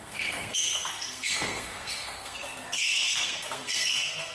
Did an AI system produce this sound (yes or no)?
yes